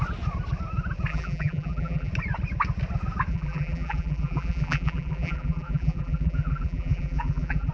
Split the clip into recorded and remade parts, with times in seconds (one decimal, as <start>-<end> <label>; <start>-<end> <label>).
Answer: 0.0-1.1 recorded; 1.1-2.1 remade; 2.1-3.3 recorded; 3.3-7.7 remade